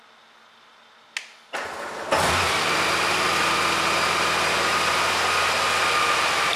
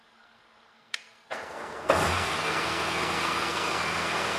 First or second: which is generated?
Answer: second